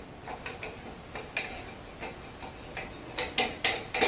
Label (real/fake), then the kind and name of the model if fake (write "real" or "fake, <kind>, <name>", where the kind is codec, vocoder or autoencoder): real